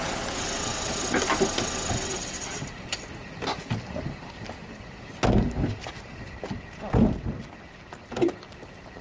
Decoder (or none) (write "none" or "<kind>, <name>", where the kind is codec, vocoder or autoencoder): none